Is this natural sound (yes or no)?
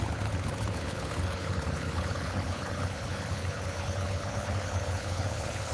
no